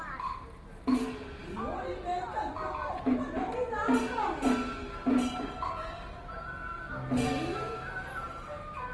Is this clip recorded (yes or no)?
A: yes